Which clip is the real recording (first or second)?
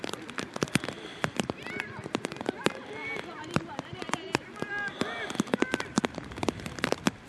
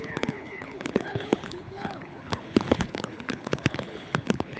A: first